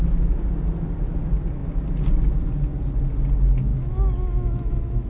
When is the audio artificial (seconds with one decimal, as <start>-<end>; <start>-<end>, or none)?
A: 3.7-5.1